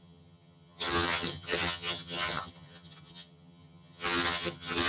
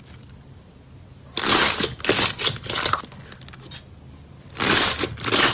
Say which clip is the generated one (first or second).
first